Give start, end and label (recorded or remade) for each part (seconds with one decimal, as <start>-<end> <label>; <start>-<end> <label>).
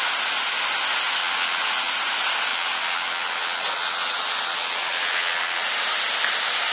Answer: 0.0-1.2 recorded; 1.2-1.9 remade; 1.9-2.5 recorded; 2.5-5.7 remade; 5.7-6.7 recorded